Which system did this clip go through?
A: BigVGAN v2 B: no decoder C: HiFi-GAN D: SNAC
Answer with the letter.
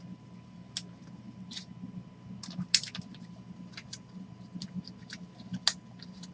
B